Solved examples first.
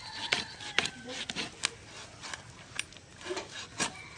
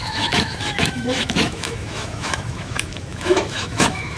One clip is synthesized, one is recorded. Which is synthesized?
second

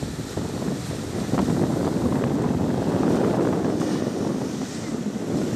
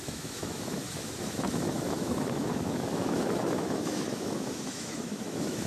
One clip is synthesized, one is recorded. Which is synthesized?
second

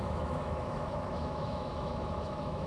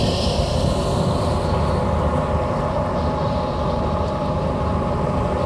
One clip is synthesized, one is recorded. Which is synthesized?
first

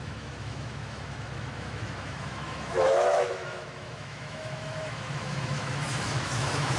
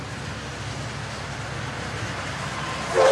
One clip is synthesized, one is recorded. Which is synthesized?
first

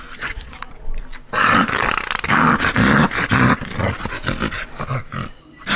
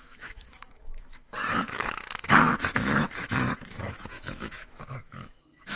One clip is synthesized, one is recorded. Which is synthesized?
second